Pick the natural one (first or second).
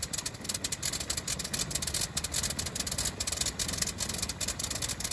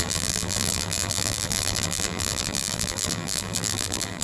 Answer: first